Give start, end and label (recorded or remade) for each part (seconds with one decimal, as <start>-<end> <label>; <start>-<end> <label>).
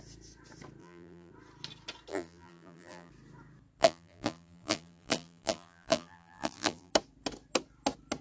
0.0-0.8 recorded; 0.8-1.3 remade; 1.3-2.1 recorded; 2.1-3.1 remade; 3.1-3.8 recorded; 3.8-6.9 remade; 6.9-8.2 recorded